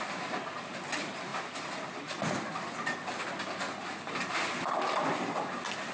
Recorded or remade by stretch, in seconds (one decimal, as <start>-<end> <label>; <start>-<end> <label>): 0.0-5.9 recorded